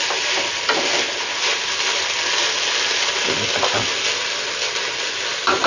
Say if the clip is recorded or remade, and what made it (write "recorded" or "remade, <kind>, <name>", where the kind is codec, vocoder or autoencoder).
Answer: recorded